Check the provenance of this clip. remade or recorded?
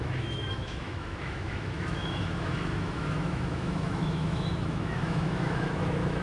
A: remade